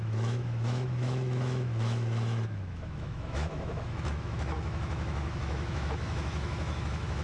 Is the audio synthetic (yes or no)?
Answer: yes